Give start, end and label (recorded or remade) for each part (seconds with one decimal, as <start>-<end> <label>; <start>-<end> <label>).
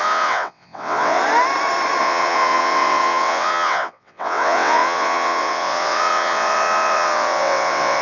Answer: 0.0-1.2 remade; 1.2-2.0 recorded; 2.0-8.0 remade